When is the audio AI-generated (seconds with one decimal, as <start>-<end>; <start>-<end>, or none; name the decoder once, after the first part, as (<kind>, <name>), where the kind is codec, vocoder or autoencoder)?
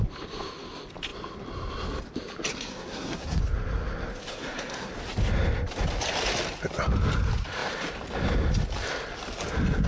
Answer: 2.5-3.4 (codec, SNAC); 4.3-4.9